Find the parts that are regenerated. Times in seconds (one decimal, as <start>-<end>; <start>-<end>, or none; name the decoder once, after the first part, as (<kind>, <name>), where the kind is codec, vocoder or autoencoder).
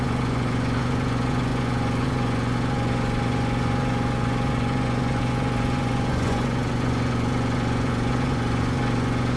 0.0-9.4 (vocoder, Vocos)